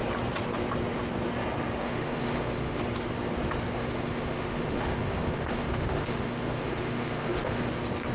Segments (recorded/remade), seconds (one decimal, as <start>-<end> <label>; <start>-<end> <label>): 0.0-1.8 recorded; 1.8-2.8 remade; 2.8-3.8 recorded; 3.8-7.6 remade; 7.6-8.1 recorded